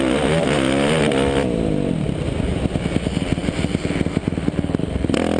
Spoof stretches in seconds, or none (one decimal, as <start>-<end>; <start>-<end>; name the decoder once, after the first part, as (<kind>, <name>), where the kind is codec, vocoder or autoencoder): none